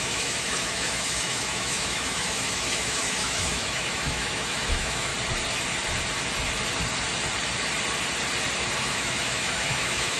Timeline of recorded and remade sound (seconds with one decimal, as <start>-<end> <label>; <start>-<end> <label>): 0.0-5.1 remade; 5.1-8.8 recorded; 8.8-10.2 remade